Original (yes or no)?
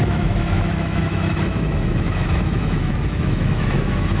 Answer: no